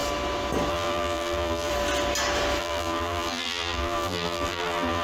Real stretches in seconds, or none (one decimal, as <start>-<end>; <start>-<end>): 0.0-0.7; 1.7-2.6